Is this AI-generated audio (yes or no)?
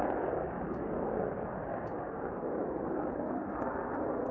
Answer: no